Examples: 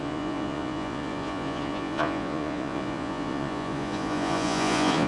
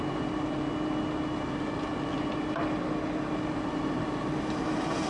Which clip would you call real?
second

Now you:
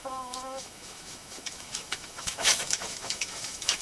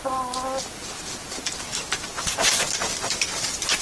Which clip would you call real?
second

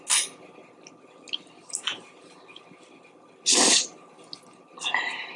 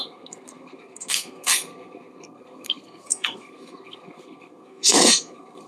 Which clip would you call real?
first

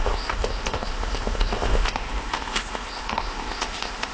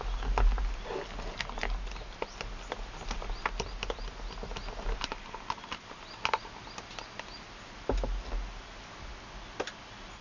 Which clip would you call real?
second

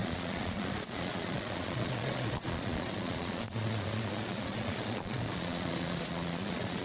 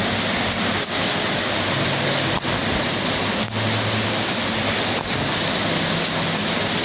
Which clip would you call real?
second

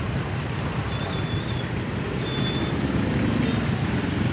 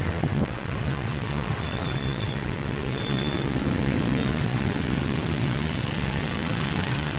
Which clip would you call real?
first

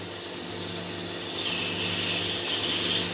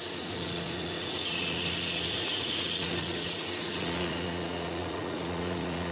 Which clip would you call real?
first